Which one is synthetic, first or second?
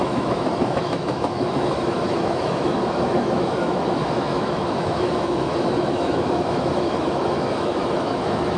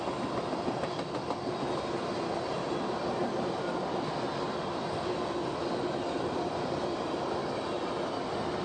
first